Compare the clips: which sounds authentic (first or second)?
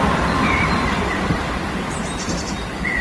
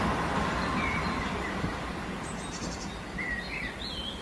second